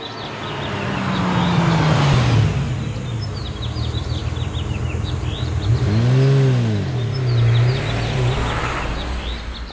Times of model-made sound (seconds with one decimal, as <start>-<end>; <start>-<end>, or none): none